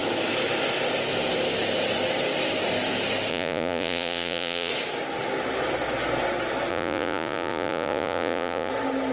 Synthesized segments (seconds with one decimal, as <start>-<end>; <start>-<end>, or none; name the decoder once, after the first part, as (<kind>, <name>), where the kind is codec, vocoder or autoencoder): 3.3-4.7 (vocoder, Vocos); 6.7-8.7